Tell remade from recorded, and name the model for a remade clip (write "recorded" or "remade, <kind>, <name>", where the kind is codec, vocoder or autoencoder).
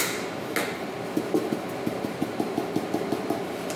recorded